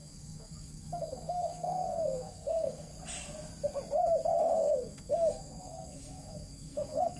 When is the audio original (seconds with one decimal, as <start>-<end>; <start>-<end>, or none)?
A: 2.9-4.4